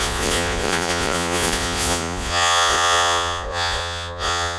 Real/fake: fake